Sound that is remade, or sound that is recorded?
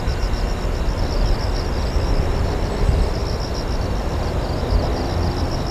recorded